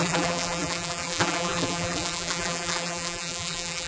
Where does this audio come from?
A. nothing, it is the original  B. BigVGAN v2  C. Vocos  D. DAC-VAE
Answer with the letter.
B